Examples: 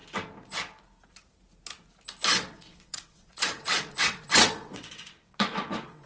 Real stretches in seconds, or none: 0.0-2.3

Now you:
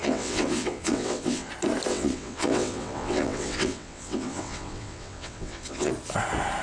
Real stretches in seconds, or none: 1.5-1.9; 5.9-6.6